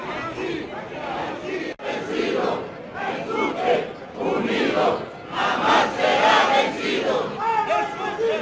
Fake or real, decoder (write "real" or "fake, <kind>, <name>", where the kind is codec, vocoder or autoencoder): real